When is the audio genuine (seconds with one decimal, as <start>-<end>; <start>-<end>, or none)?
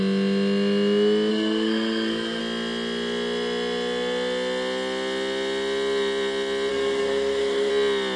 0.0-1.3; 2.4-6.7; 7.7-8.2